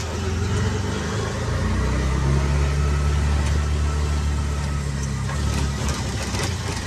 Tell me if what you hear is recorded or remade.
recorded